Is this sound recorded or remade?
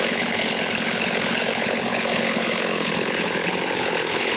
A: remade